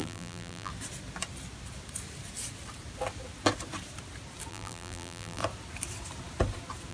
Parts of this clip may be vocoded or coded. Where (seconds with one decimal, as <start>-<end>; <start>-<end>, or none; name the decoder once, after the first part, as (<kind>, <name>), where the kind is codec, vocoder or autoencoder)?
0.0-0.7 (vocoder, BigVGAN v2); 4.5-5.4